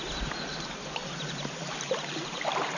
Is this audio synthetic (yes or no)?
no